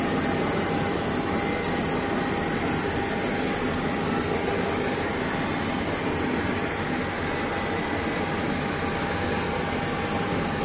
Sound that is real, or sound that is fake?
real